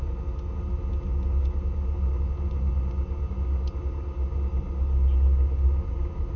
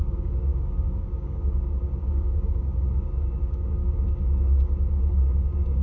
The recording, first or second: first